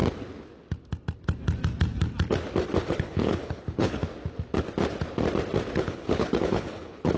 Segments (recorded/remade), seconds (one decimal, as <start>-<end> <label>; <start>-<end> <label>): 0.0-2.9 recorded; 2.9-4.1 remade; 4.1-5.8 recorded; 5.8-7.2 remade

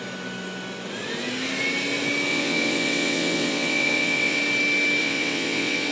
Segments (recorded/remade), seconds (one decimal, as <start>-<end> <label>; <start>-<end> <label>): 0.0-2.3 recorded; 2.3-4.4 remade; 4.4-5.0 recorded; 5.0-5.9 remade